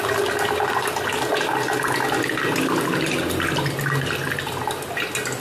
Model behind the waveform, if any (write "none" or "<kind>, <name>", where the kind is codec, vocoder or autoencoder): none